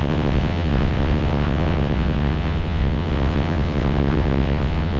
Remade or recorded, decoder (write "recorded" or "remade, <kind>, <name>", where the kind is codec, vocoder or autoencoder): remade, vocoder, WaveNeXt